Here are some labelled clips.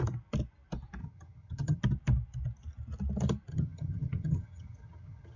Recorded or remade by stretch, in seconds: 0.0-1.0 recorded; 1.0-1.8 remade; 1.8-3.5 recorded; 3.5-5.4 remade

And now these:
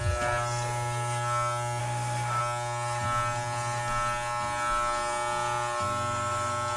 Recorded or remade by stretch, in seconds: 0.0-1.8 recorded; 1.8-2.4 remade; 2.4-6.8 recorded

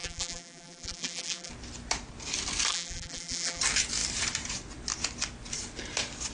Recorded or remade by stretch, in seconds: 0.0-1.5 remade; 1.5-2.7 recorded; 2.7-3.6 remade; 3.6-6.3 recorded

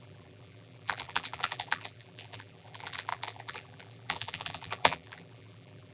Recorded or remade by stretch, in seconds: 0.0-5.9 remade

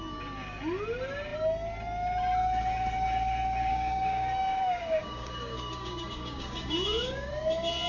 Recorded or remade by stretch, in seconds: 0.0-3.7 recorded; 3.7-7.3 remade; 7.3-7.9 recorded